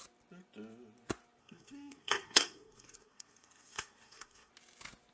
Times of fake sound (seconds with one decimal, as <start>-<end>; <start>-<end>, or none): 1.4-4.5

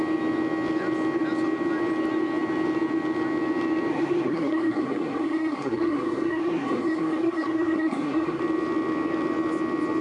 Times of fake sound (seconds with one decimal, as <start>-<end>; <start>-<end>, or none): 3.9-8.4

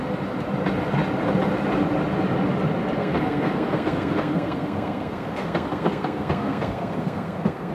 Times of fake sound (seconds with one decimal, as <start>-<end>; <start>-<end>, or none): 3.0-7.7

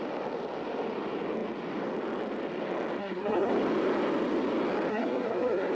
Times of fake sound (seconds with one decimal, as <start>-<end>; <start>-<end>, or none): 3.0-3.5; 4.9-5.7

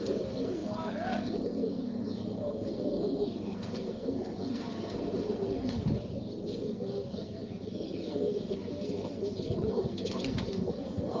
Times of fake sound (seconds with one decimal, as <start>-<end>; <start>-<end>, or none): 0.0-5.8; 6.4-11.2